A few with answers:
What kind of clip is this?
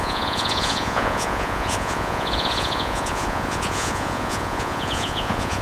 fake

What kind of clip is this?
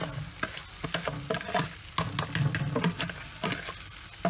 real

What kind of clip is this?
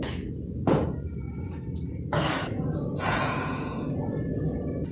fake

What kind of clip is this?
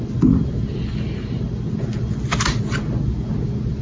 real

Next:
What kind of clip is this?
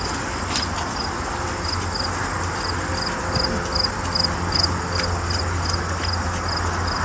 real